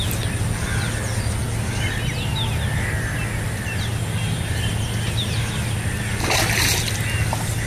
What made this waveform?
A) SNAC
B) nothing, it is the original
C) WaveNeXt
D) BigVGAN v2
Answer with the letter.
B